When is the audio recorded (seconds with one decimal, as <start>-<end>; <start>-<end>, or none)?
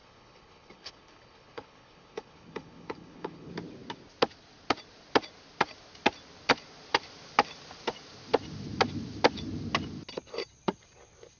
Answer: 3.5-11.4